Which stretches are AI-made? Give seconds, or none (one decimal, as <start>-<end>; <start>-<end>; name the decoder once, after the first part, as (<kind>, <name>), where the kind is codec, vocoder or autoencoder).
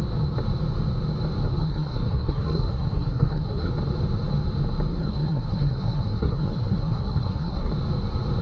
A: 1.6-3.7 (codec, SNAC); 4.9-7.7